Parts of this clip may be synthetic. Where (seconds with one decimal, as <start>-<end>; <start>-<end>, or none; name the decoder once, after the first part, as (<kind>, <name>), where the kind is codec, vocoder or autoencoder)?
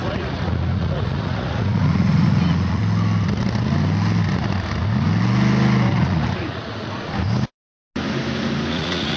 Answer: 0.0-2.8 (vocoder, Vocos); 5.9-7.1; 8.7-9.2